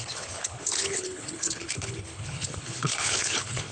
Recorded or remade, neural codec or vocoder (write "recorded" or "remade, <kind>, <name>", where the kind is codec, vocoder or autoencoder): remade, codec, HILCodec